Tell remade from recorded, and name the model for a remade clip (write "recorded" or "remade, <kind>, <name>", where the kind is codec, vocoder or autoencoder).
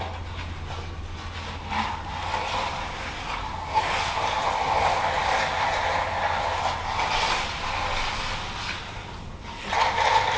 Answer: recorded